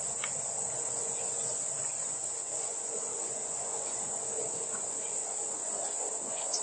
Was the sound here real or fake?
fake